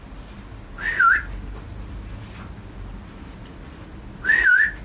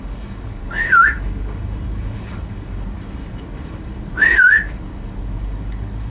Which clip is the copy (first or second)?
second